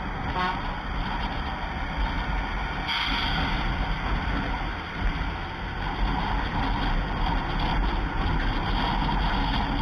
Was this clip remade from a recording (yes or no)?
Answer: no